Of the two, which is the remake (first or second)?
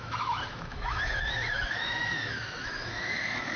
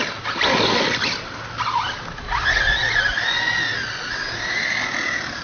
first